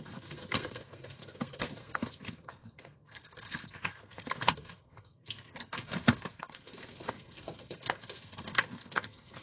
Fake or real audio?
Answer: fake